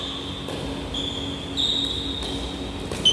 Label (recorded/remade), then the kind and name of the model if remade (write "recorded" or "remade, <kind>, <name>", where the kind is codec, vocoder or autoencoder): recorded